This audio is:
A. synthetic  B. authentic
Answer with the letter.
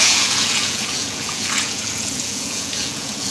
A